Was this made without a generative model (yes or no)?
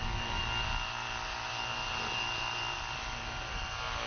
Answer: yes